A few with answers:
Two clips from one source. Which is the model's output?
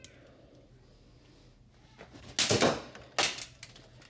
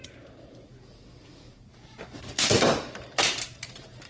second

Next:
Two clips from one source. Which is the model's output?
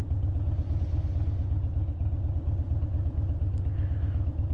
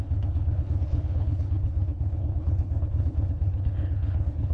second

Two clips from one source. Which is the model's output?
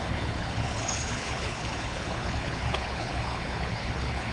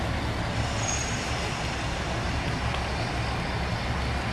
first